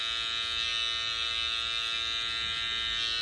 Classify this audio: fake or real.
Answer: real